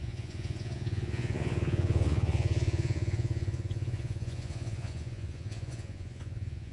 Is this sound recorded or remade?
remade